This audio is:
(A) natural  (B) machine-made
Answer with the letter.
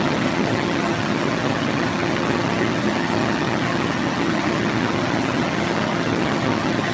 B